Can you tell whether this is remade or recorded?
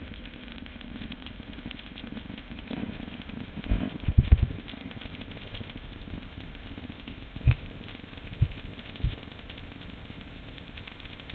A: remade